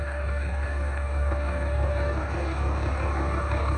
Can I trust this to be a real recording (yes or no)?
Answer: no